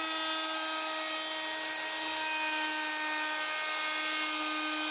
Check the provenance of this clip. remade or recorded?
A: recorded